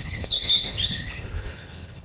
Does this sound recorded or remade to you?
remade